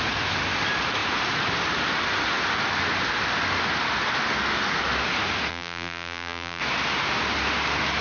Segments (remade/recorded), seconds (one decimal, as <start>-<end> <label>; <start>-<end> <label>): 0.0-5.5 recorded; 5.5-6.6 remade; 6.6-8.0 recorded

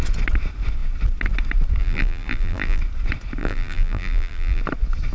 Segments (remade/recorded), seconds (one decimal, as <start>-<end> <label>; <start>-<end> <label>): 0.0-1.8 recorded; 1.8-2.8 remade; 2.8-3.4 recorded; 3.4-4.6 remade; 4.6-5.1 recorded